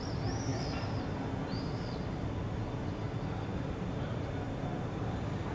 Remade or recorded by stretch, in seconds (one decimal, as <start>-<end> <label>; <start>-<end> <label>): 0.0-5.5 recorded